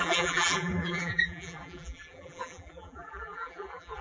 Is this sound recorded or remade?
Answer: remade